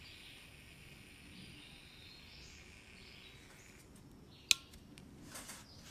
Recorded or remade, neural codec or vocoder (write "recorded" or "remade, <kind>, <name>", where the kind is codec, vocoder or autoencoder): recorded